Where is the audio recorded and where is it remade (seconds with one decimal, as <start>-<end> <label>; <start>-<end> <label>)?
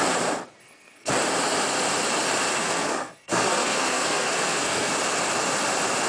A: 0.0-0.6 recorded; 0.6-1.1 remade; 1.1-2.6 recorded; 2.6-4.9 remade; 4.9-6.1 recorded